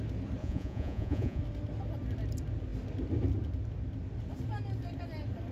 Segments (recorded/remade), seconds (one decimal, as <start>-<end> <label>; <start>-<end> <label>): 0.0-0.4 recorded; 0.4-1.4 remade; 1.4-5.5 recorded